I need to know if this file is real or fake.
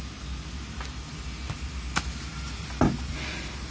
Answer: real